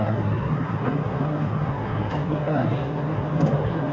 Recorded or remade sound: remade